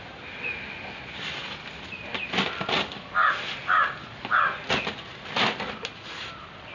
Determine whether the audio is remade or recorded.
recorded